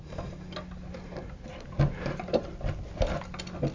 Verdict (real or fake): real